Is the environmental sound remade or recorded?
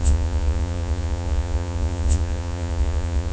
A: remade